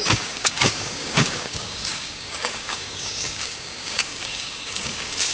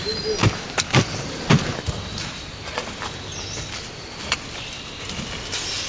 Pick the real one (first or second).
second